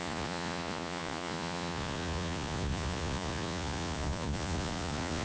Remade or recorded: remade